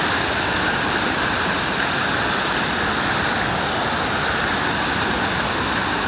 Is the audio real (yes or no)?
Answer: yes